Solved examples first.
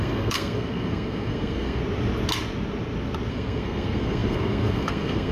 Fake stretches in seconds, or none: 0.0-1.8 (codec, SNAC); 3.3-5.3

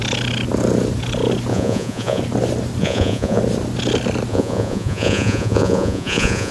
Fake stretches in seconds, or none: 1.5-2.2 (vocoder, Vocos); 2.8-3.4; 4.3-6.5

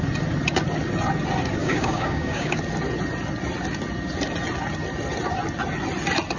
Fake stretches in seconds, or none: 1.6-2.6 (codec, DAC)